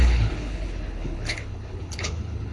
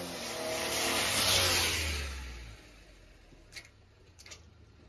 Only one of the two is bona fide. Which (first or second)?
second